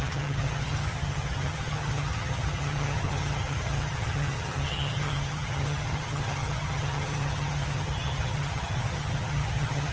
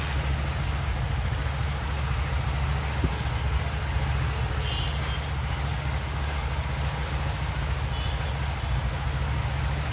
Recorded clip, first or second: second